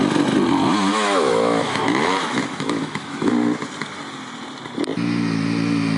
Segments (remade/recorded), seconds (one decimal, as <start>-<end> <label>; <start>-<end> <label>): 0.0-0.9 recorded; 0.9-3.3 remade; 3.3-6.0 recorded